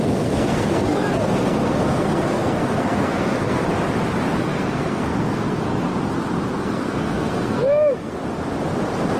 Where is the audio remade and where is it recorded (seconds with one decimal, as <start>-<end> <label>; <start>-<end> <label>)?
0.0-3.7 remade; 3.7-4.4 recorded; 4.4-5.9 remade; 5.9-6.6 recorded; 6.6-8.2 remade; 8.2-9.2 recorded